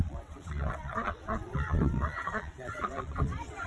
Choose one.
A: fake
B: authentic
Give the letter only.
A